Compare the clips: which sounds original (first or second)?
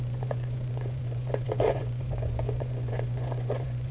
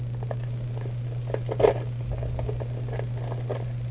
second